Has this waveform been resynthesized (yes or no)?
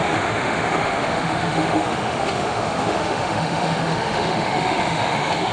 yes